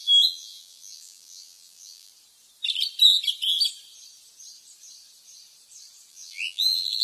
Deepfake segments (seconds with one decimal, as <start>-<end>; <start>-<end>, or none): 0.0-2.1; 6.1-7.0